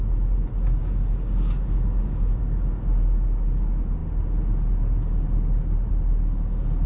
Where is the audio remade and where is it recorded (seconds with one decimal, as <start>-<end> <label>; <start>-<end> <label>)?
0.0-0.8 recorded; 0.8-2.4 remade; 2.4-6.9 recorded